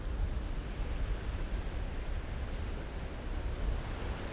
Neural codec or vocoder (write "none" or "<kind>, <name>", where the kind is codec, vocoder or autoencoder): none